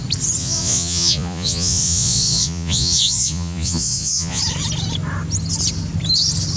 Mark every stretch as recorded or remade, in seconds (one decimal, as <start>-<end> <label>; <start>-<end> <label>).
0.0-0.4 recorded; 0.4-4.4 remade; 4.4-6.6 recorded